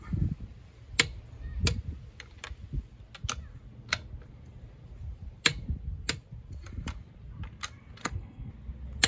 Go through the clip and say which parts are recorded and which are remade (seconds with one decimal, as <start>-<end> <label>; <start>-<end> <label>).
0.0-8.0 recorded; 8.0-8.5 remade; 8.5-9.1 recorded